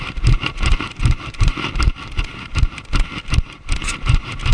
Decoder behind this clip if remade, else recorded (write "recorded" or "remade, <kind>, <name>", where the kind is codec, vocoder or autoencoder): recorded